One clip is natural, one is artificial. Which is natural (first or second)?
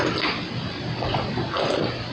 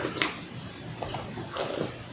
first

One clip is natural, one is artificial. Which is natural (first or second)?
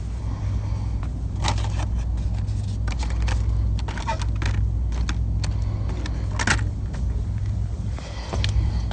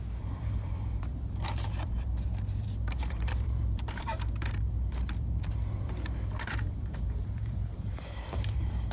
first